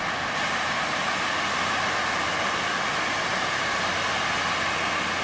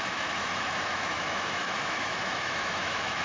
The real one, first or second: first